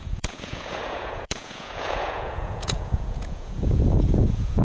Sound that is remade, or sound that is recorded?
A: remade